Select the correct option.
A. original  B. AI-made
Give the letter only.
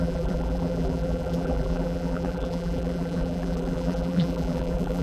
B